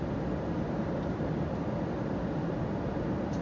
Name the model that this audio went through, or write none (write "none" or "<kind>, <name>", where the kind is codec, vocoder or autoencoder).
none